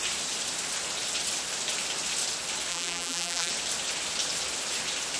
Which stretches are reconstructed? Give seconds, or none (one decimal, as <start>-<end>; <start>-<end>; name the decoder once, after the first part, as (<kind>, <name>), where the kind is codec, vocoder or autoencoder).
2.7-3.5 (vocoder, BigVGAN v2)